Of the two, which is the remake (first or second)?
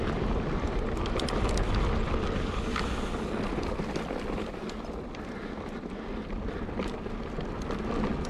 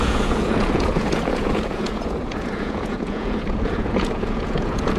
second